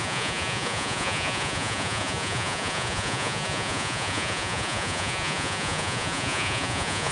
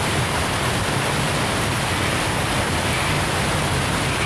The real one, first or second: second